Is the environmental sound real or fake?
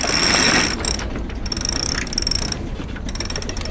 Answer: real